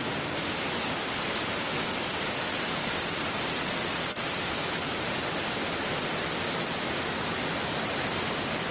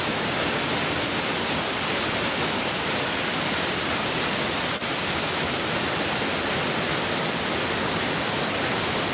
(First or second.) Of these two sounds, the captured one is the first